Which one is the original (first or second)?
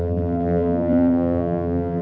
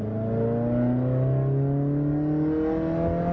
second